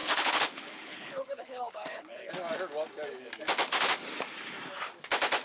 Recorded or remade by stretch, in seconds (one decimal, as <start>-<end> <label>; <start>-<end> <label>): 0.0-2.3 remade; 2.3-5.4 recorded